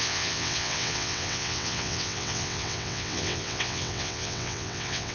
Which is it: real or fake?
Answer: fake